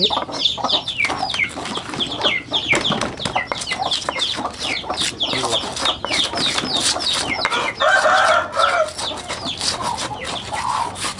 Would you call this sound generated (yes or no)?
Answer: no